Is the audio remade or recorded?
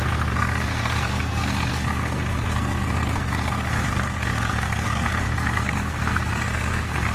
remade